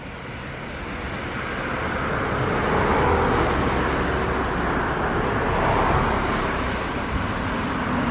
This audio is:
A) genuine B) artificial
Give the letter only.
A